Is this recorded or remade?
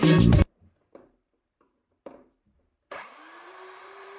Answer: remade